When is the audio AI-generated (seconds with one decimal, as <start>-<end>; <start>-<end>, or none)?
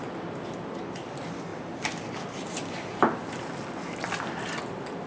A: none